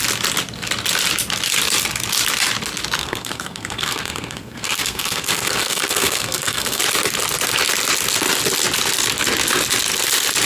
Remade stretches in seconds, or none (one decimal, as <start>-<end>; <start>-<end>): 3.0-6.8